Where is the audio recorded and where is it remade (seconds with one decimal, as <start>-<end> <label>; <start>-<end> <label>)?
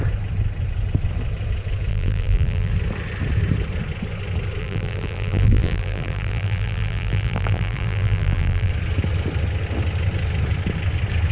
0.0-1.9 recorded; 1.9-2.7 remade; 2.7-4.6 recorded; 4.6-8.7 remade; 8.7-11.3 recorded